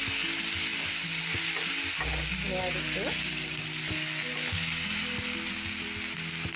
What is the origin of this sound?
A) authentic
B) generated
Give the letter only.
A